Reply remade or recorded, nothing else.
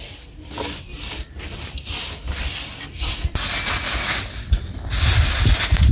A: recorded